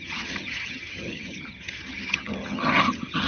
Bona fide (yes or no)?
no